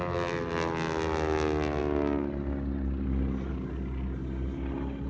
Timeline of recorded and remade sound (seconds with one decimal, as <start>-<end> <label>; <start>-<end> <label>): 0.0-5.1 recorded